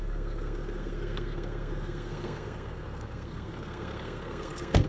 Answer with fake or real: fake